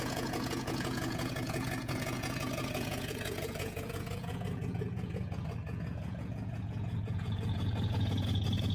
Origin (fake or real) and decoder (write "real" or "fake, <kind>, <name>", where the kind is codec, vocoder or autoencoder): fake, vocoder, Vocos